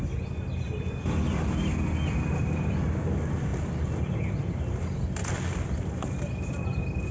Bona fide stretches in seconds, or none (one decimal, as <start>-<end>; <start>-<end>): 0.0-7.1